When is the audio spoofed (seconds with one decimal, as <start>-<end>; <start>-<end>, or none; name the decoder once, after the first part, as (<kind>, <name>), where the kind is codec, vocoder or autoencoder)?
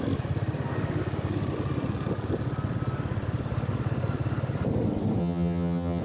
5.2-6.0 (vocoder, HiFi-GAN)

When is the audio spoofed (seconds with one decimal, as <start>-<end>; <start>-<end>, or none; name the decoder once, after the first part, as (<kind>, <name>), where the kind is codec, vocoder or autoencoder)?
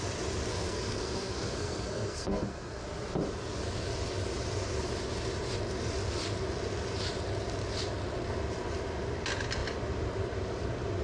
0.5-2.8 (codec, SNAC)